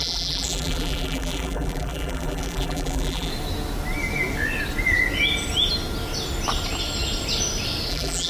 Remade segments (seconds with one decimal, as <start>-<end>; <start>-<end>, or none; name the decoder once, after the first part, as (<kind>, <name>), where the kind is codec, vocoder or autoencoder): 0.0-3.3 (vocoder, BigVGAN v2); 7.9-8.3